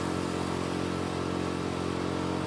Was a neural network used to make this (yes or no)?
no